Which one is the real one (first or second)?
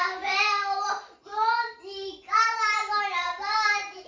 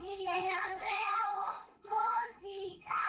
first